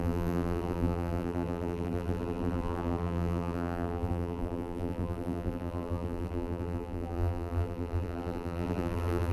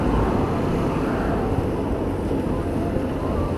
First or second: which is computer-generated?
first